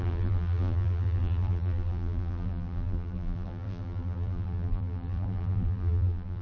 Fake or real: fake